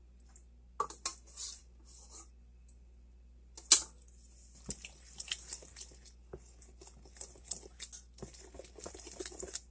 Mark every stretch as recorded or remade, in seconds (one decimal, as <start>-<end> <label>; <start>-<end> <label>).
0.0-9.7 recorded